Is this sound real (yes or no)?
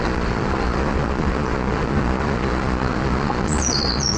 no